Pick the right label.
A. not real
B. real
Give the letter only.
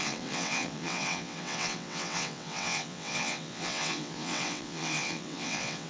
A